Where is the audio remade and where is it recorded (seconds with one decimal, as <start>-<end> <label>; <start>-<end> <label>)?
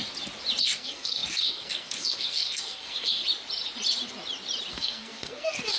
0.0-0.6 recorded; 0.6-3.2 remade; 3.2-4.7 recorded; 4.7-5.8 remade